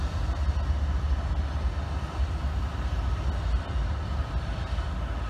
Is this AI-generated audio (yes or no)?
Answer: no